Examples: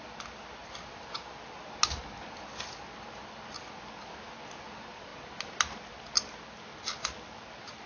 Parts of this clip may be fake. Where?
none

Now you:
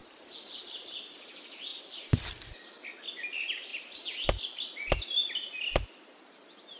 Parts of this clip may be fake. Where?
1.7-3.0 (vocoder, BigVGAN v2); 3.7-6.1

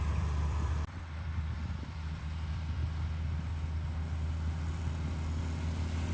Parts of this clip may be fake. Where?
0.0-2.8 (vocoder, BigVGAN v2)

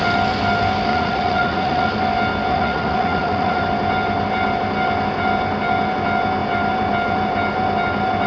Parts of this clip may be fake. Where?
0.9-1.9 (vocoder, Vocos); 2.5-3.6

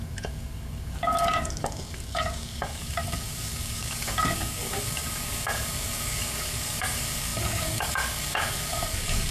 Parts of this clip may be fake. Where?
0.0-9.3 (codec, DAC)

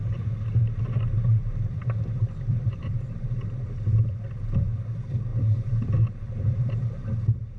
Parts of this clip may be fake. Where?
1.4-3.7 (vocoder, BigVGAN v2); 5.3-6.8

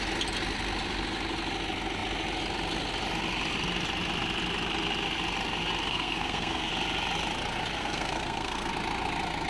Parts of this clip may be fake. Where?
5.9-6.7 (codec, SNAC); 7.8-8.7

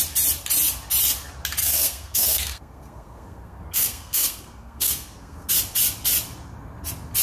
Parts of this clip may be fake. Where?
1.6-5.5 (codec, SNAC)